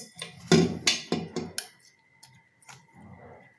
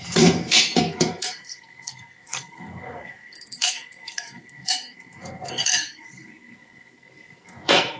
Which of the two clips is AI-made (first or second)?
second